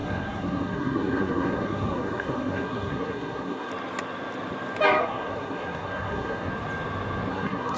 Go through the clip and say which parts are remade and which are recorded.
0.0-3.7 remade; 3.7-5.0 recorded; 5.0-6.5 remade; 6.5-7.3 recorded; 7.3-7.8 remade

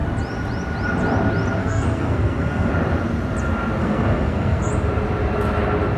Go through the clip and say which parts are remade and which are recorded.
0.0-1.6 recorded; 1.6-2.7 remade; 2.7-3.8 recorded; 3.8-4.7 remade; 4.7-6.0 recorded